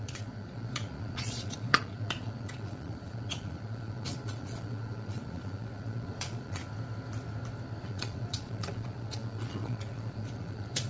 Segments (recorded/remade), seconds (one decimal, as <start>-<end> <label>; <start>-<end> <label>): 0.0-6.6 remade; 6.6-7.8 recorded; 7.8-10.9 remade